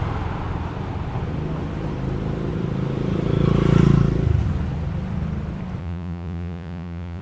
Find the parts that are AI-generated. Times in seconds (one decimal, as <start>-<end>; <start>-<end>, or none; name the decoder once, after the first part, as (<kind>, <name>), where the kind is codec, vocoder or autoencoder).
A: 5.8-7.2 (vocoder, Vocos)